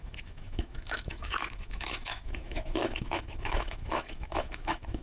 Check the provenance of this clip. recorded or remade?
remade